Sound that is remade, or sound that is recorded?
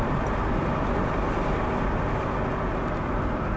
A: recorded